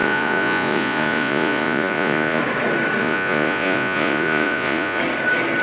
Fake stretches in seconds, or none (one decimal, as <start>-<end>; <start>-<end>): 0.0-2.4; 3.0-5.0

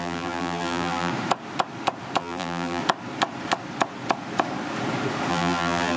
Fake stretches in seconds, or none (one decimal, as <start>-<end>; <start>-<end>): 0.0-1.1; 2.2-2.8; 5.3-6.0

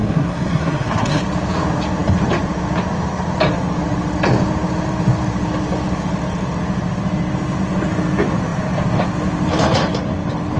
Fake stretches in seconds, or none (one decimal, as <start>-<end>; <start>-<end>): 0.0-1.2

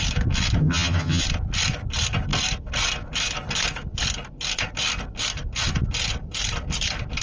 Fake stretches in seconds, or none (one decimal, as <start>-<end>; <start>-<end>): 0.6-1.2

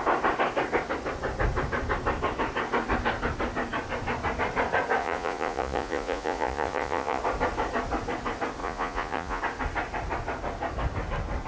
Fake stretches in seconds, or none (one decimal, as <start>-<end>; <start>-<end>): 5.0-7.2; 8.6-9.4